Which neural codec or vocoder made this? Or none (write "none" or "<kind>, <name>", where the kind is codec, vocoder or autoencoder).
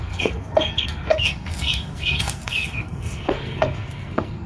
codec, SNAC